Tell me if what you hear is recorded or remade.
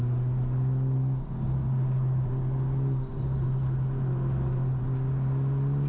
recorded